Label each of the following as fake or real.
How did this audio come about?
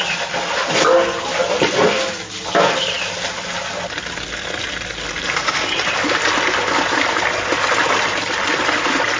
real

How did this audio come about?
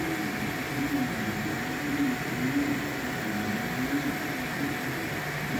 real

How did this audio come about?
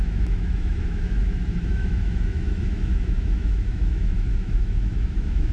fake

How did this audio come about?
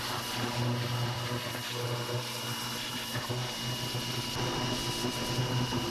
real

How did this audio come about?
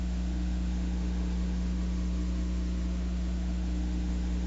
fake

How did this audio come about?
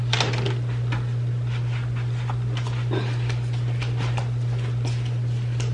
real